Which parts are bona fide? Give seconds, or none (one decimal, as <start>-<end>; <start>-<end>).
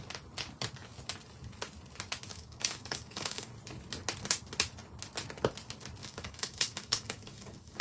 0.0-2.3; 3.5-6.0